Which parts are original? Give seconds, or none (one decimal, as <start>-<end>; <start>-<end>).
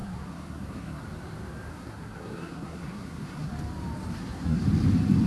1.0-1.7; 3.5-4.1; 4.6-5.3